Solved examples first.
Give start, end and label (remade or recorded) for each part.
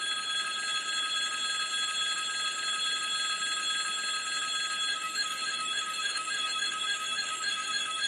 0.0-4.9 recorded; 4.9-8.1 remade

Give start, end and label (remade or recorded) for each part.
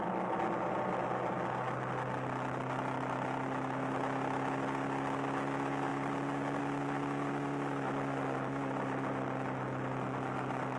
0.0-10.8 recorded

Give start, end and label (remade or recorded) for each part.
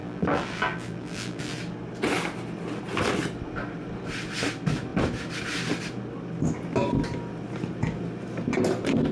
0.0-1.6 remade; 1.6-9.1 recorded